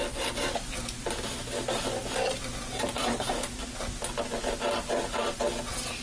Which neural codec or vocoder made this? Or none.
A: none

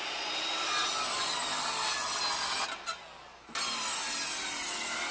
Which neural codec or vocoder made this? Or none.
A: none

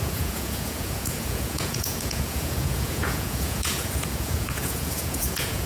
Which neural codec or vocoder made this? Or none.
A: vocoder, Vocos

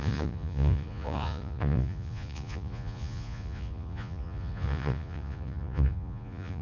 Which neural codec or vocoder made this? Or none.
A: vocoder, Vocos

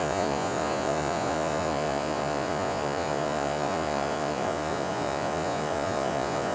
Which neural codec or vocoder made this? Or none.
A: vocoder, Vocos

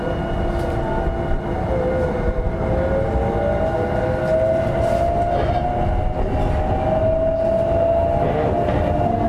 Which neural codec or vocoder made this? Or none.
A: none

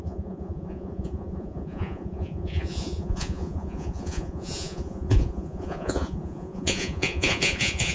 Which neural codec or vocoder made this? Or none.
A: vocoder, Vocos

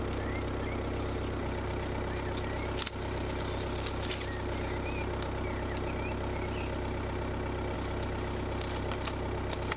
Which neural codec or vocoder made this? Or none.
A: none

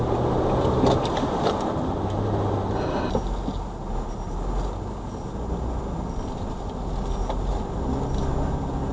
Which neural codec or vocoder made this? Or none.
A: none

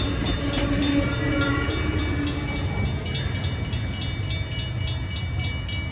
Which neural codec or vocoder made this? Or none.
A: none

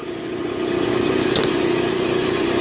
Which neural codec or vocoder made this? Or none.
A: vocoder, Vocos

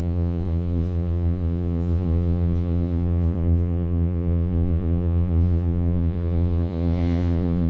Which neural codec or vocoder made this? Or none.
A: vocoder, Vocos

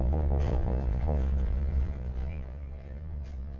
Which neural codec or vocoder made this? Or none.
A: vocoder, Vocos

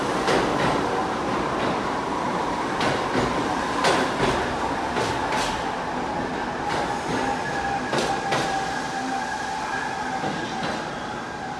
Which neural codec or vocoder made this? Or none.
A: none